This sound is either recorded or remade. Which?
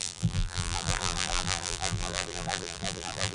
remade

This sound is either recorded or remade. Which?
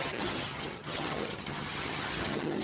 remade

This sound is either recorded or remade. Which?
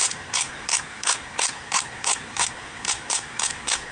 remade